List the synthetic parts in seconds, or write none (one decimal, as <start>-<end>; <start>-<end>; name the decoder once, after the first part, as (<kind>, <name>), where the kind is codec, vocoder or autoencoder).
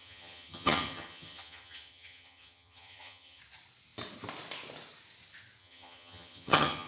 0.0-3.4 (vocoder, HiFi-GAN); 5.6-6.9